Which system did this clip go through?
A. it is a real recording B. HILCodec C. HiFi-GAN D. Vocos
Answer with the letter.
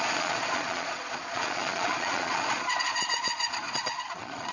D